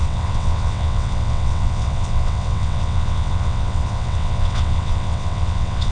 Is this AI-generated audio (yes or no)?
yes